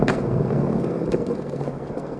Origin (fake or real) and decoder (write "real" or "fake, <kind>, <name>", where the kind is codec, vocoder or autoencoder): fake, codec, SNAC